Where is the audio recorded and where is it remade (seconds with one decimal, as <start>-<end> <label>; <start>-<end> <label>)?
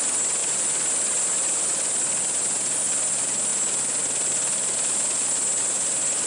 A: 0.0-6.3 recorded